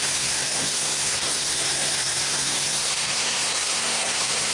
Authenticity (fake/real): fake